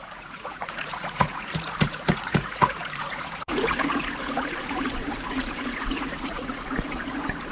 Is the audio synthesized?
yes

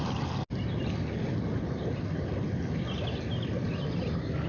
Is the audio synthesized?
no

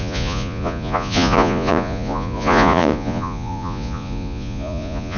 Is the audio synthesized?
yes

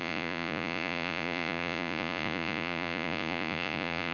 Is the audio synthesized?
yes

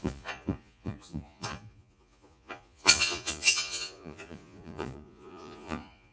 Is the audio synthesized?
yes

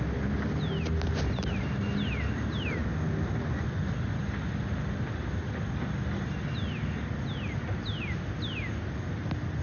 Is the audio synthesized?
no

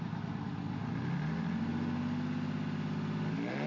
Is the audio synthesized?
no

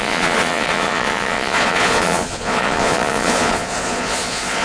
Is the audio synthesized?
yes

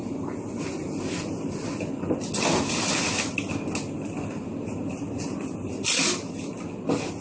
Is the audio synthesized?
no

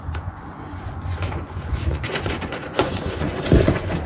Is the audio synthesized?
yes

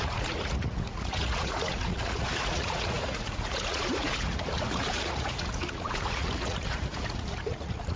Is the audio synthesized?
yes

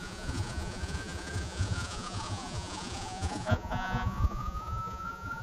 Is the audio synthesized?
yes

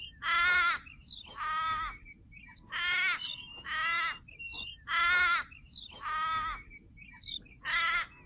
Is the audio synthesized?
no